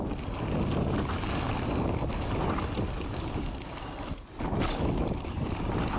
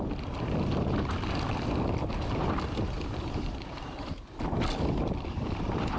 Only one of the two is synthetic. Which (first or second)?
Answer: second